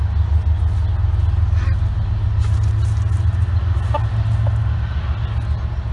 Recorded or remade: recorded